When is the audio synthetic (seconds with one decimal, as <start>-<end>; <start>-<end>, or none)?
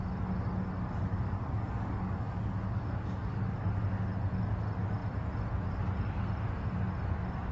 1.1-3.4